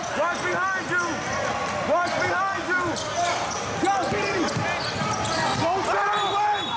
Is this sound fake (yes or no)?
no